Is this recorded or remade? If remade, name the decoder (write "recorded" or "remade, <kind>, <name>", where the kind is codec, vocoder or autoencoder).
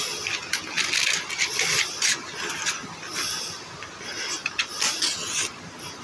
recorded